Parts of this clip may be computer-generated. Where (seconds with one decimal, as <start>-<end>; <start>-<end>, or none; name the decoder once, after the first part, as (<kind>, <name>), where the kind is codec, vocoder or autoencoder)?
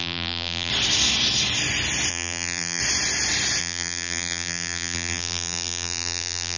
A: 0.0-0.7 (vocoder, BigVGAN v2); 2.1-2.8; 3.6-6.6